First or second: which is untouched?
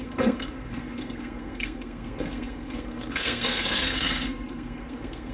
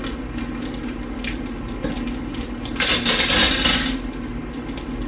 second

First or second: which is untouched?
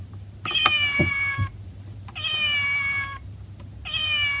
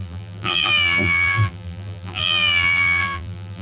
first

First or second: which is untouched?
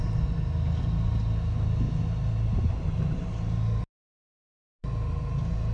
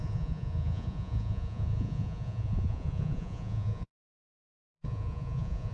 first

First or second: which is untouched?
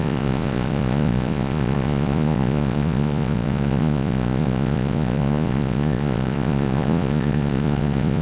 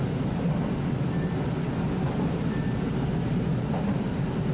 second